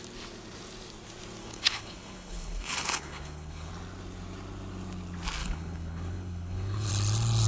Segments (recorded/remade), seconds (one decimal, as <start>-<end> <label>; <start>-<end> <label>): 0.0-1.4 recorded; 1.4-3.7 remade; 3.7-5.4 recorded; 5.4-6.9 remade; 6.9-7.5 recorded